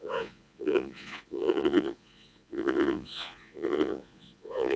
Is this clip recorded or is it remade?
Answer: remade